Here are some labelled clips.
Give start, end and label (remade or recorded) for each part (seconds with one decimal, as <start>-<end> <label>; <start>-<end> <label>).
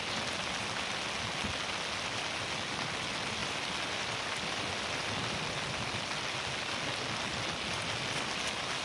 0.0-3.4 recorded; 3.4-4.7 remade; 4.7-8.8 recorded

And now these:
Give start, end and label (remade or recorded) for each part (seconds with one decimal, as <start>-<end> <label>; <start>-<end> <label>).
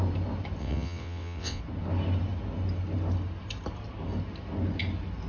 0.0-0.6 recorded; 0.6-1.6 remade; 1.6-5.3 recorded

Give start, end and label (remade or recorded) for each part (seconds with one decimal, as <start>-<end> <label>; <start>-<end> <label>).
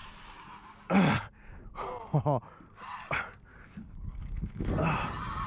0.0-3.8 recorded; 3.8-4.7 remade; 4.7-5.5 recorded